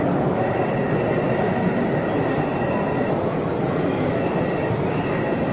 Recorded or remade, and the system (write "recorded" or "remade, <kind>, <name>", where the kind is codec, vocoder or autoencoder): recorded